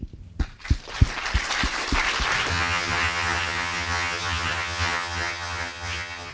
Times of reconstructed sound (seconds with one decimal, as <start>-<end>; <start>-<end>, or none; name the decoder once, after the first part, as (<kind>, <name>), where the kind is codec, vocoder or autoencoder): 2.5-6.3 (vocoder, HiFi-GAN)